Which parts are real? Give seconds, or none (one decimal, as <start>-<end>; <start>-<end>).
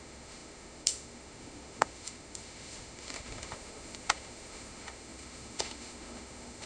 none